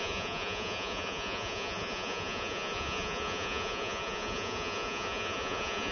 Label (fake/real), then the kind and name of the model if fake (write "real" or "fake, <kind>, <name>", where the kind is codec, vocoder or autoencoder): fake, vocoder, Vocos